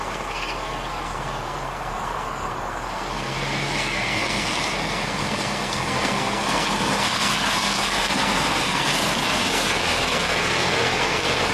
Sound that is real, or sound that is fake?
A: fake